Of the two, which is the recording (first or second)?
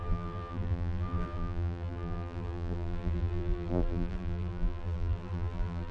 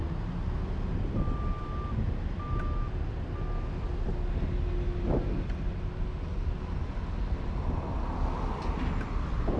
second